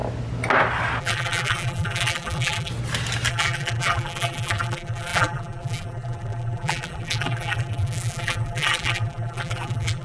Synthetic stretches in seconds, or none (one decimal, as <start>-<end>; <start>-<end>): 1.0-2.7; 3.3-10.0

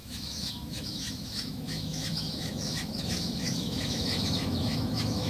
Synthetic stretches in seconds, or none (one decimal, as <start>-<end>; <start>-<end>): 0.0-5.3

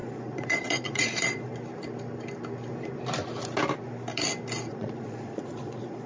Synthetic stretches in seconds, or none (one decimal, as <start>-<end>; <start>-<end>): 0.0-1.5; 4.7-6.1